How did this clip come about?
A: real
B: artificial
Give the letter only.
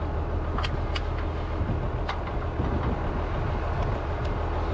A